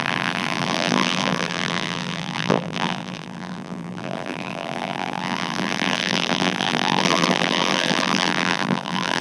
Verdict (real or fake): fake